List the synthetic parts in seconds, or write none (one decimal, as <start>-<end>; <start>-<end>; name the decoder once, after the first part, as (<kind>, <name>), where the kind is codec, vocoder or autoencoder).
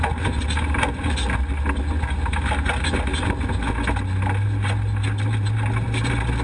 none